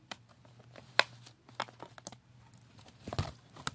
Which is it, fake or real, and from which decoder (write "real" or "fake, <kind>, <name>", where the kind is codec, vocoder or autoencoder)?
real